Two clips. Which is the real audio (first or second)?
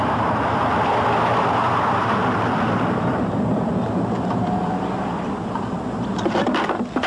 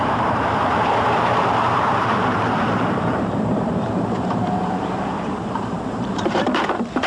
first